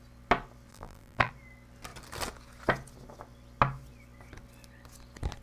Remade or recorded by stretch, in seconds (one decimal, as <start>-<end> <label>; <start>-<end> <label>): 0.0-0.7 recorded; 0.7-1.3 remade; 1.3-5.4 recorded